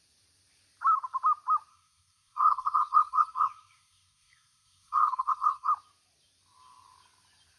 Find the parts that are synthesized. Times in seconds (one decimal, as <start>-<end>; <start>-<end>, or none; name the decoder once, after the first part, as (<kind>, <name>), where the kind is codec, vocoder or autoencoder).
1.7-5.7 (codec, SNAC)

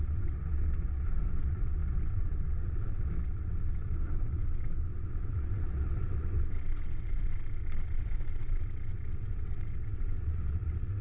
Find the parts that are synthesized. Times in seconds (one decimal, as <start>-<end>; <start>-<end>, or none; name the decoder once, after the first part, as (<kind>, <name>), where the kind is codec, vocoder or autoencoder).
0.0-11.0 (vocoder, WaveNeXt)

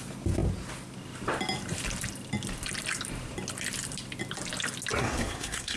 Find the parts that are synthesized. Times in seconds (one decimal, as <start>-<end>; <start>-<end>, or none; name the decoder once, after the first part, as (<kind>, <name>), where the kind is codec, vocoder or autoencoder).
5.0-5.8 (codec, SNAC)